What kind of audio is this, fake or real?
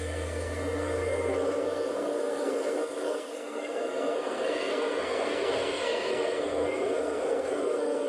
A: fake